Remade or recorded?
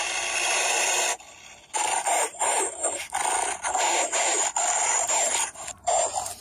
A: remade